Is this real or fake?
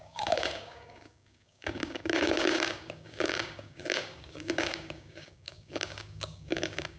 fake